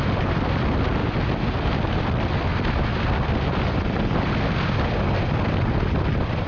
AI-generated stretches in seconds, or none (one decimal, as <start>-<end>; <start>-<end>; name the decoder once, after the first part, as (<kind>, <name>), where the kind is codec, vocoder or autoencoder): none